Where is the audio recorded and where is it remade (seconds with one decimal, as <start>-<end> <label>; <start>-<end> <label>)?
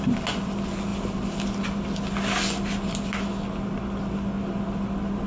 0.0-5.3 recorded